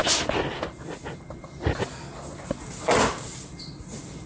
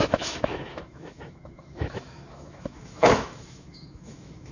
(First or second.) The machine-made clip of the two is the second